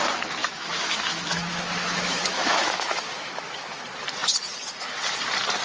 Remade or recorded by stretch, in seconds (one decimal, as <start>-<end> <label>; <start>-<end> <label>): 0.0-0.4 recorded; 0.4-3.8 remade; 3.8-5.6 recorded